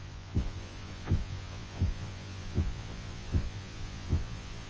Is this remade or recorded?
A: remade